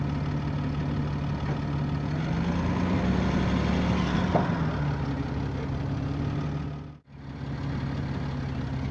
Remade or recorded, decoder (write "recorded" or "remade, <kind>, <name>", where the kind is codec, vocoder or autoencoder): recorded